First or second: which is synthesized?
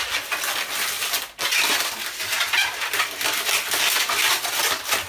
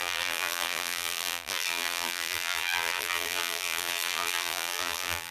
second